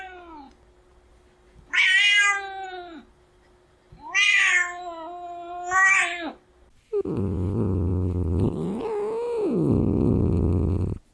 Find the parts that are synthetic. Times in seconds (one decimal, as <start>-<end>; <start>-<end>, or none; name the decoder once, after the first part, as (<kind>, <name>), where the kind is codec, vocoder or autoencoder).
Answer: none